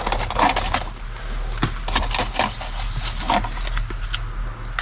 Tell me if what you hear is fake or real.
real